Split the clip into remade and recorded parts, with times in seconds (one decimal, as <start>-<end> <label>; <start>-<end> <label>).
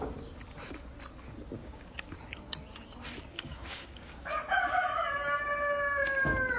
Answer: 0.0-1.6 recorded; 1.6-2.2 remade; 2.2-3.3 recorded; 3.3-4.3 remade; 4.3-6.6 recorded